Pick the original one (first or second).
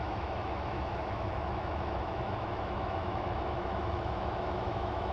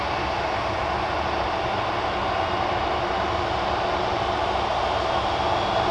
second